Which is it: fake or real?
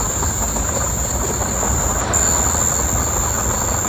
real